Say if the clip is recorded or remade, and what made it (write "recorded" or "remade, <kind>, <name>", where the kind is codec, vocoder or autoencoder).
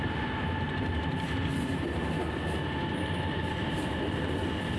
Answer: recorded